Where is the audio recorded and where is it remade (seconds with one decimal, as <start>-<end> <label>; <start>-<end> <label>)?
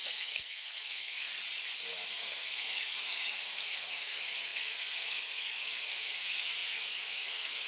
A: 0.0-1.3 remade; 1.3-2.1 recorded; 2.1-7.7 remade